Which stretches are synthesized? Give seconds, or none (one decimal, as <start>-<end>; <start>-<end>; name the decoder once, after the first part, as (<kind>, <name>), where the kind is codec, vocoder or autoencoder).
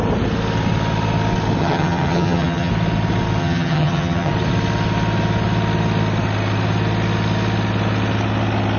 1.6-2.7 (vocoder, HiFi-GAN); 3.4-4.3